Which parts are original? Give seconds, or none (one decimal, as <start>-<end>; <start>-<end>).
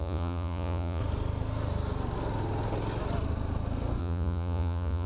1.0-4.0